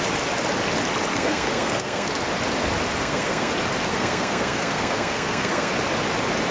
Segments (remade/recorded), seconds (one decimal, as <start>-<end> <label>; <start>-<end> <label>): 0.0-1.1 recorded; 1.1-2.1 remade; 2.1-3.0 recorded; 3.0-3.5 remade; 3.5-3.9 recorded; 3.9-5.7 remade; 5.7-6.5 recorded